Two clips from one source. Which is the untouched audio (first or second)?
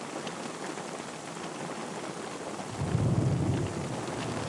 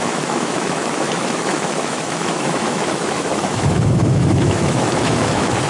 first